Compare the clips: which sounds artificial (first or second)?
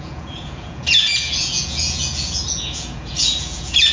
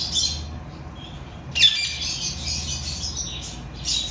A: first